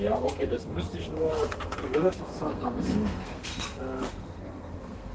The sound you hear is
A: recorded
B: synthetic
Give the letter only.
B